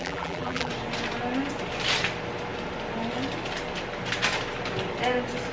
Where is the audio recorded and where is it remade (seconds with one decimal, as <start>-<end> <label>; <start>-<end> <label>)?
0.0-0.7 remade; 0.7-5.5 recorded